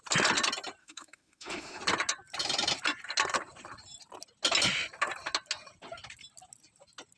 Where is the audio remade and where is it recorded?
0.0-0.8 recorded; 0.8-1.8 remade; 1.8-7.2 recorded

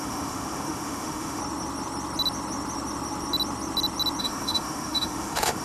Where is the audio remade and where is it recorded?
0.0-1.4 remade; 1.4-4.2 recorded; 4.2-5.6 remade

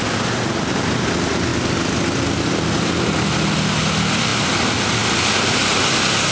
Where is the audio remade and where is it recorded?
0.0-6.3 recorded

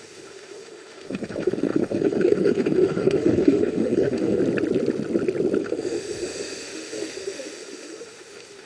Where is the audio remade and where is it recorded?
0.0-4.4 remade; 4.4-5.6 recorded; 5.6-8.7 remade